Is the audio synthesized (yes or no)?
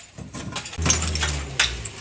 no